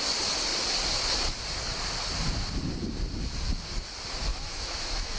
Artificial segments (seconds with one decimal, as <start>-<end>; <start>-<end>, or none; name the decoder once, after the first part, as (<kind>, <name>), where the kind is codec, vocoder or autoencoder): 4.3-5.2 (autoencoder, DAC-VAE)